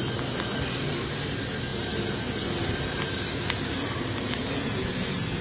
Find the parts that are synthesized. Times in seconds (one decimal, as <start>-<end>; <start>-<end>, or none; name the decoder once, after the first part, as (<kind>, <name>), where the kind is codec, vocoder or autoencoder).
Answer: 1.7-2.2 (vocoder, BigVGAN v2); 2.6-4.9